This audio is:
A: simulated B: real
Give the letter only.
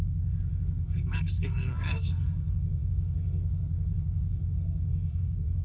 A